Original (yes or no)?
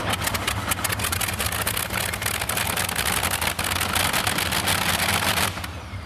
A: yes